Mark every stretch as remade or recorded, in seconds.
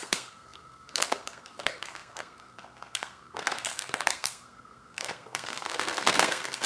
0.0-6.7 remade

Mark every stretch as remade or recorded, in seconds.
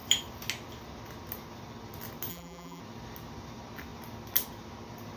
0.0-2.3 recorded; 2.3-2.8 remade; 2.8-5.2 recorded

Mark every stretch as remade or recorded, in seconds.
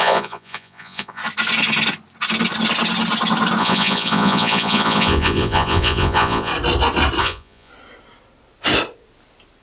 0.0-1.2 remade; 1.2-3.6 recorded; 3.6-6.5 remade; 6.5-7.2 recorded; 7.2-7.7 remade; 7.7-9.6 recorded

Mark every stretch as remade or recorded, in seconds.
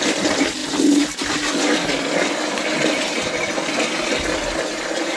0.0-5.2 recorded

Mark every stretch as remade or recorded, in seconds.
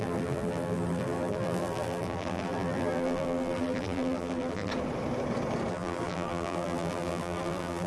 0.0-4.7 remade; 4.7-5.7 recorded; 5.7-7.9 remade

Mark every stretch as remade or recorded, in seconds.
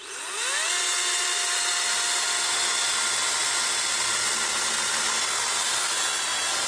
0.0-6.7 recorded